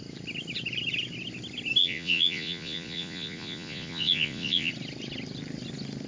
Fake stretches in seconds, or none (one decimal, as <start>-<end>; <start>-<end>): 1.8-4.7